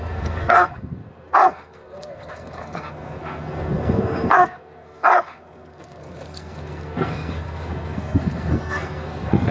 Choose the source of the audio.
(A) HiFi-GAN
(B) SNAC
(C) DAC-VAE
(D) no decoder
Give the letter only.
B